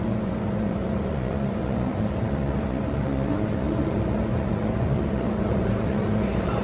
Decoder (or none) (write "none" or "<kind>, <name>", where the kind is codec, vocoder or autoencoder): vocoder, Vocos